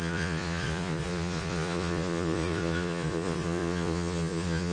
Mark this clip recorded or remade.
remade